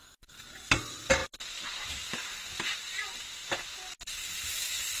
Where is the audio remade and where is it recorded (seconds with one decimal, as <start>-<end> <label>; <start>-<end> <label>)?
0.0-5.0 recorded